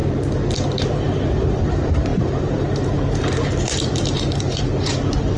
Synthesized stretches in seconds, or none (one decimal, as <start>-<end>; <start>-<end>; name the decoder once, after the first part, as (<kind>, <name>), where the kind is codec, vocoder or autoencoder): 0.8-5.4 (vocoder, BigVGAN v2)

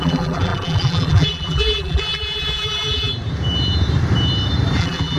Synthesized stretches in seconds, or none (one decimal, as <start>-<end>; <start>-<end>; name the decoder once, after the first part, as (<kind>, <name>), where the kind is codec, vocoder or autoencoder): 0.0-3.1 (vocoder, BigVGAN v2); 4.8-5.2

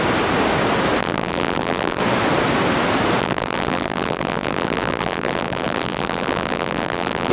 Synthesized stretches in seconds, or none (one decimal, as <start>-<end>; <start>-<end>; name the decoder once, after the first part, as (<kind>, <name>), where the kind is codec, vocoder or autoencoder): 1.0-2.0 (vocoder, BigVGAN v2); 3.2-7.3

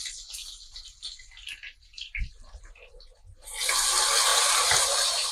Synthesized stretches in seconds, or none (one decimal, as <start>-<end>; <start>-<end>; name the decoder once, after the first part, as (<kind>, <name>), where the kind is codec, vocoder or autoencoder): 1.9-3.0 (vocoder, BigVGAN v2); 4.3-5.3

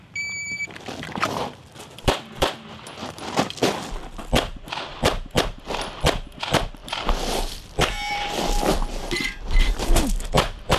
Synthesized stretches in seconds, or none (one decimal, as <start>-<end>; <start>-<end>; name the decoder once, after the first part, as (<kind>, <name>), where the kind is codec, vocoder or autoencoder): 0.0-10.8 (vocoder, BigVGAN v2)

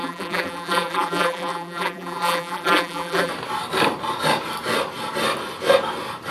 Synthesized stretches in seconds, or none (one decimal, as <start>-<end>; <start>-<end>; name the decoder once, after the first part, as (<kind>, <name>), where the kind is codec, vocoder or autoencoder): 0.0-3.3 (vocoder, BigVGAN v2)

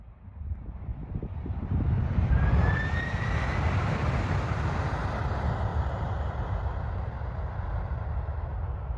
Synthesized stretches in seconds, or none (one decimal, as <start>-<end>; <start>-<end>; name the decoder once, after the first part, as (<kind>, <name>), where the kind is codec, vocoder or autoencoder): 0.9-2.4 (vocoder, BigVGAN v2); 5.7-6.9

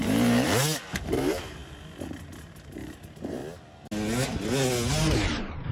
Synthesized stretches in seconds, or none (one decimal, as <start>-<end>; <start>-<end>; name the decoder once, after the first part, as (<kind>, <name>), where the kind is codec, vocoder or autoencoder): 0.0-0.6 (vocoder, BigVGAN v2); 1.1-1.6; 2.5-3.4; 4.9-5.7